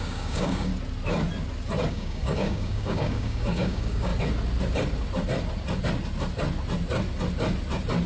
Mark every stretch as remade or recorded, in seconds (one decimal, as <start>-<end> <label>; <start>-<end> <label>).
0.0-0.7 remade; 0.7-1.9 recorded; 1.9-4.1 remade; 4.1-8.1 recorded